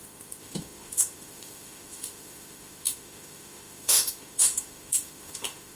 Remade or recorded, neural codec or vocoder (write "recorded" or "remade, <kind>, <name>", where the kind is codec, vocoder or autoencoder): remade, autoencoder, DAC-VAE